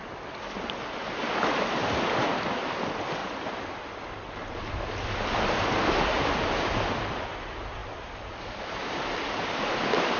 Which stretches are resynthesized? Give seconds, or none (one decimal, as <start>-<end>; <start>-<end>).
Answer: 3.2-4.7

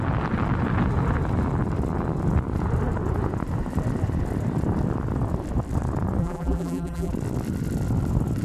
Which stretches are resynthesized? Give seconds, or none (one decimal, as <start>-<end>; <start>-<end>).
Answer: 6.2-7.1

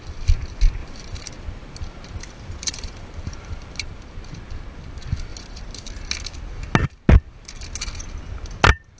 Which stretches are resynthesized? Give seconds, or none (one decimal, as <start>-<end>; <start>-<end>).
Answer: 0.8-3.8; 5.3-5.9

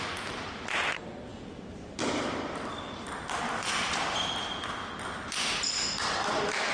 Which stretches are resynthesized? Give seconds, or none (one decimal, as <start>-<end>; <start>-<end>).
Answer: 1.3-5.3

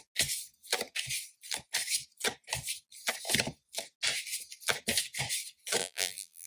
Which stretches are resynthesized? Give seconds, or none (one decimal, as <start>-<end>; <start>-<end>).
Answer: 5.8-6.5

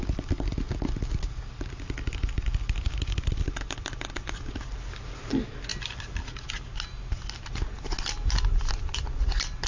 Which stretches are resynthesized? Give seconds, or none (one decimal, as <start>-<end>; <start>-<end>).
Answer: none

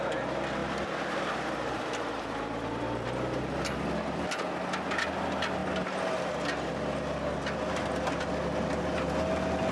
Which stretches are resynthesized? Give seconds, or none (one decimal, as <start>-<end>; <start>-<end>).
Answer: 0.6-3.4